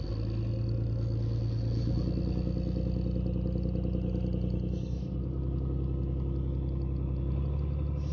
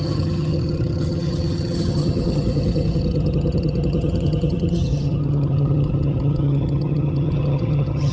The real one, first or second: first